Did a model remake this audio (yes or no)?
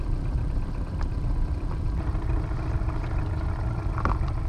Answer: no